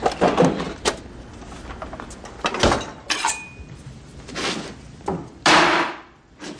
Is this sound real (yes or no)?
yes